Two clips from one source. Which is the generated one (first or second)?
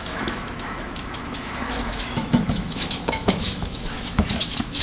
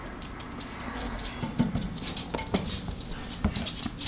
first